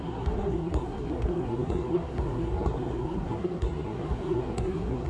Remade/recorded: remade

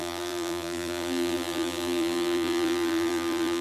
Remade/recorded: remade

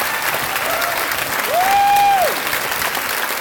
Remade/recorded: recorded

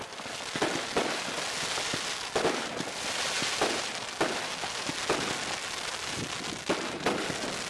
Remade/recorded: recorded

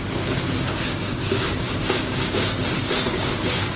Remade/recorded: remade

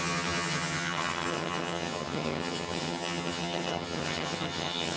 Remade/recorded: remade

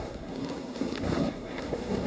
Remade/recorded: remade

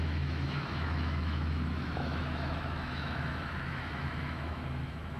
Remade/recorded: remade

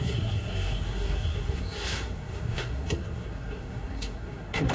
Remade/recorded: remade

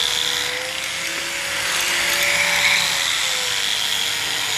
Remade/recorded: recorded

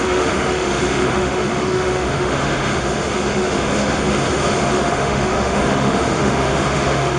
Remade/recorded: remade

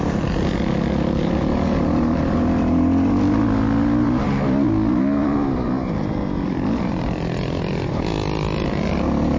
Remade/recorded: recorded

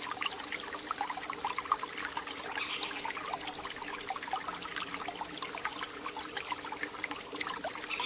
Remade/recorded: recorded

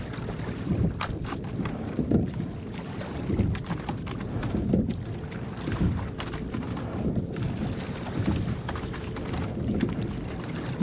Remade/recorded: remade